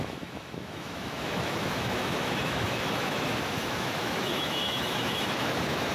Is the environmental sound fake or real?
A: fake